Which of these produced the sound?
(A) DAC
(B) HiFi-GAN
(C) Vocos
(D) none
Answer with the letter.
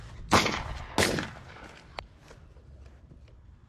D